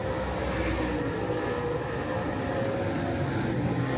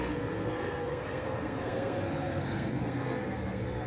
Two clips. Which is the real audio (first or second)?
first